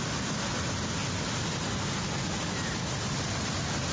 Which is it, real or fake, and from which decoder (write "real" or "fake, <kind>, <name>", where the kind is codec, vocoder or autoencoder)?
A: real